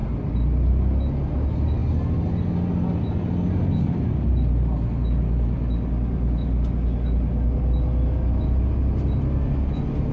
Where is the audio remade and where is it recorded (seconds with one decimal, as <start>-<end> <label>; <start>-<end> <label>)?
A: 0.0-10.1 recorded